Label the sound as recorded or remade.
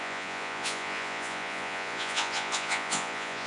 remade